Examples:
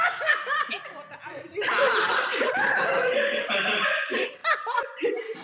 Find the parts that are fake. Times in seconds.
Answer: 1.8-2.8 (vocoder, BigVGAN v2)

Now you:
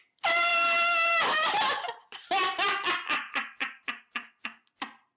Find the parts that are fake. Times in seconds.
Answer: 0.0-0.5 (vocoder, BigVGAN v2); 1.5-5.2

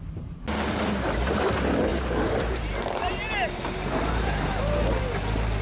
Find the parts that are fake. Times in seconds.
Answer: 1.9-5.0 (vocoder, BigVGAN v2)

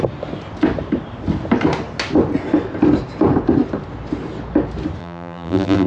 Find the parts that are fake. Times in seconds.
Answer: 5.0-5.9 (vocoder, BigVGAN v2)

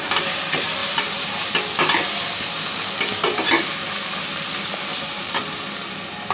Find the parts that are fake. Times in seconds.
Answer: 0.8-1.5 (vocoder, BigVGAN v2); 4.9-5.6

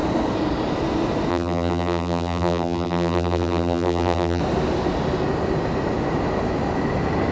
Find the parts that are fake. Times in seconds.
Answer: 1.3-4.4 (vocoder, BigVGAN v2)